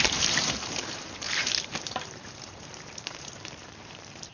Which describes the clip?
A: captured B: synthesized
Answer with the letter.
B